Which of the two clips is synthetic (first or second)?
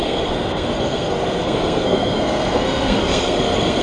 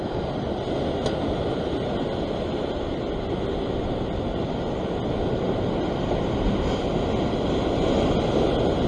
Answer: first